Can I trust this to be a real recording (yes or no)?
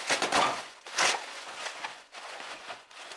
no